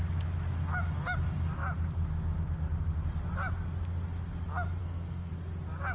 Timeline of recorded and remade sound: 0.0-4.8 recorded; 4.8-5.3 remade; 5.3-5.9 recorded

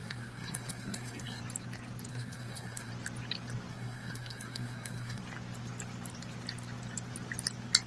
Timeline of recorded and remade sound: 0.0-1.4 remade; 1.4-2.1 recorded; 2.1-2.9 remade; 2.9-3.7 recorded; 3.7-5.2 remade; 5.2-7.9 recorded

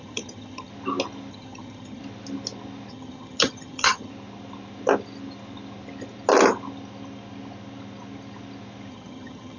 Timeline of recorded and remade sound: 0.0-0.7 remade; 0.7-1.3 recorded; 1.3-2.0 remade; 2.0-2.9 recorded; 2.9-4.1 remade; 4.1-8.9 recorded; 8.9-9.6 remade

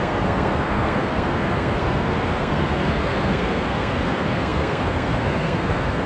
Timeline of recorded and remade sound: 0.0-6.1 remade

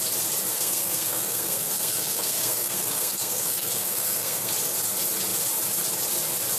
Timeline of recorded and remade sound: 0.0-0.5 recorded; 0.5-4.5 remade; 4.5-6.6 recorded

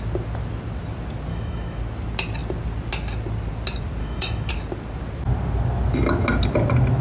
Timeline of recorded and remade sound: 0.0-1.3 recorded; 1.3-1.8 remade; 1.8-4.0 recorded; 4.0-4.5 remade; 4.5-7.0 recorded